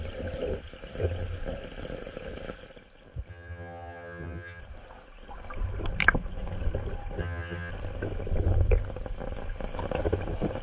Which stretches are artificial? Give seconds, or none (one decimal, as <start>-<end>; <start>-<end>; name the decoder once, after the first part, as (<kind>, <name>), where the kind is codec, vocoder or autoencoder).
3.3-4.6 (vocoder, HiFi-GAN); 7.2-7.7